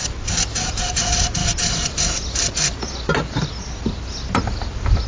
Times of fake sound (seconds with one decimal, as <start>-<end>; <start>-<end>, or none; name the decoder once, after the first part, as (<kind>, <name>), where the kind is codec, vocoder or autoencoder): none